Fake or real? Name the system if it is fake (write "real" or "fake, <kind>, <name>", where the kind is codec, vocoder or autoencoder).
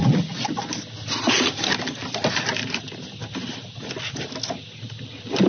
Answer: real